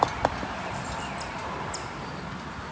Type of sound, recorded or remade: recorded